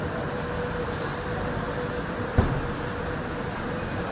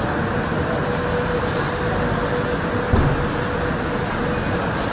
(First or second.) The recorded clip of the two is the second